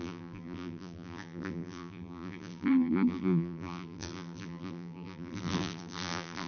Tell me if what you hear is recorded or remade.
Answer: remade